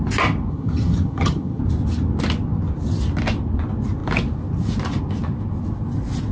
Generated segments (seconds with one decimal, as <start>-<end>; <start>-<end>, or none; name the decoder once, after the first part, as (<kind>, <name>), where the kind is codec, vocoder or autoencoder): 0.5-1.6 (vocoder, HiFi-GAN)